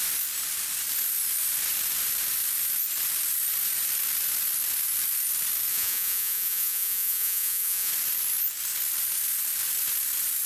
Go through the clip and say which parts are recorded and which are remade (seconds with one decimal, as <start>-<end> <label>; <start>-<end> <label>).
0.0-5.7 recorded; 5.7-7.9 remade; 7.9-10.5 recorded